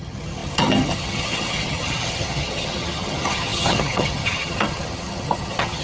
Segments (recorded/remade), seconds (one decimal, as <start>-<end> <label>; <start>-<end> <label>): 0.0-5.8 remade